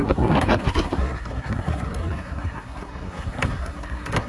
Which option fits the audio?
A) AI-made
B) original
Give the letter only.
A